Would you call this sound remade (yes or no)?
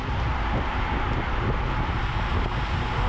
no